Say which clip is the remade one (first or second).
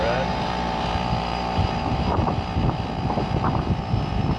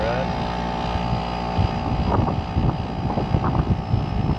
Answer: first